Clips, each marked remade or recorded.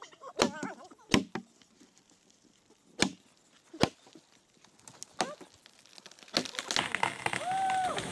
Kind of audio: recorded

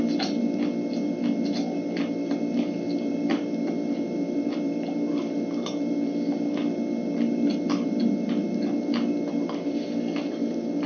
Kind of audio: recorded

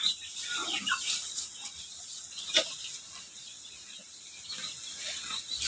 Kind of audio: recorded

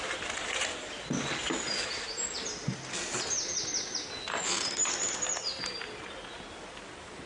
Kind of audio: recorded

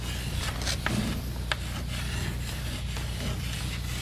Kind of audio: recorded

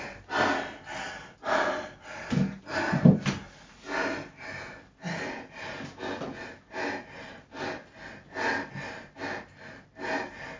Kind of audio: recorded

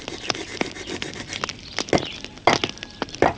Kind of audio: recorded